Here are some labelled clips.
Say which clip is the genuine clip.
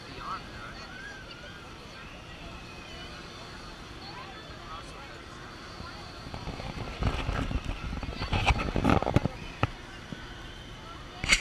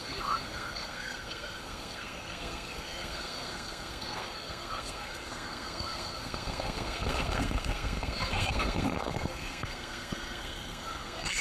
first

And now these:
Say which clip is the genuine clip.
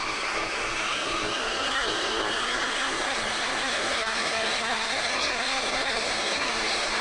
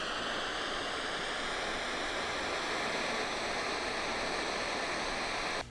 second